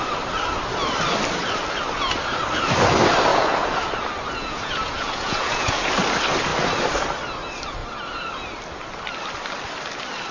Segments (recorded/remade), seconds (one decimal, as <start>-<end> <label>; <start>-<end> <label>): 0.0-3.3 recorded; 3.3-3.9 remade; 3.9-4.4 recorded; 4.4-5.9 remade; 5.9-10.3 recorded